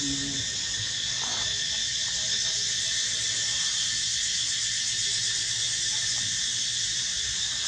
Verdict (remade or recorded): recorded